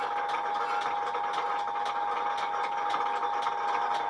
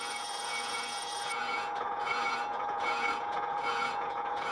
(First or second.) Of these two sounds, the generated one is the second